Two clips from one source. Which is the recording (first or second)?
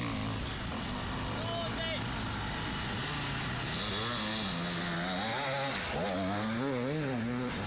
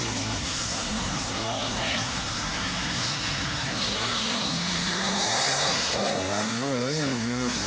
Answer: first